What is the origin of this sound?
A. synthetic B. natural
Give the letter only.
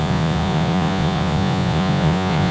A